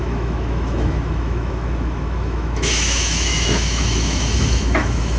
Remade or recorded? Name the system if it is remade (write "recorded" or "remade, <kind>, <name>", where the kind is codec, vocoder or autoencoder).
remade, autoencoder, DAC-VAE